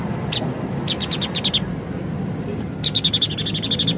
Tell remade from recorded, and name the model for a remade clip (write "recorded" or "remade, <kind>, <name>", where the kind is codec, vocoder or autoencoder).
recorded